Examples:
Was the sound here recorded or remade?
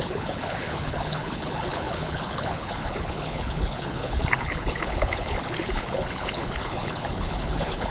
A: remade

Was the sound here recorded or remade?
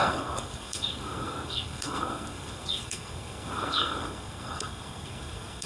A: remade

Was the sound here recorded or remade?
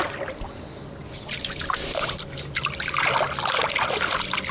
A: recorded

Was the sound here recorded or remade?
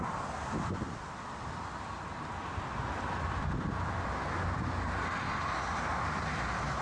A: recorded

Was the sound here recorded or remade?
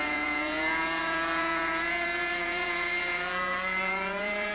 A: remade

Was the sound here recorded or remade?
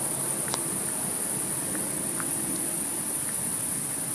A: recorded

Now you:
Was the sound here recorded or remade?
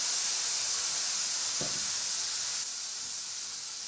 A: recorded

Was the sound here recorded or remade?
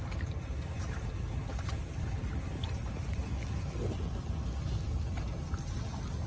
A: recorded